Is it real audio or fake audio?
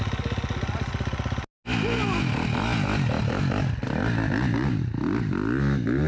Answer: real